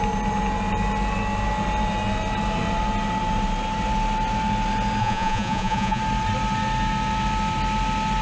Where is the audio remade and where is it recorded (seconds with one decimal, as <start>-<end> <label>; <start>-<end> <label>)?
0.0-5.0 recorded; 5.0-6.0 remade; 6.0-8.2 recorded